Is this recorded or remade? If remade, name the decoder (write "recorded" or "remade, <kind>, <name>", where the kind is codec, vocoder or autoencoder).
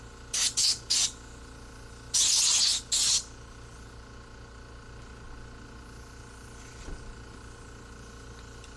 recorded